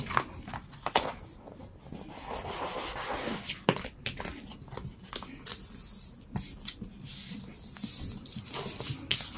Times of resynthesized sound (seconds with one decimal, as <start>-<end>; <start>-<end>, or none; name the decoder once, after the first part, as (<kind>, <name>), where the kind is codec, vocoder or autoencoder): none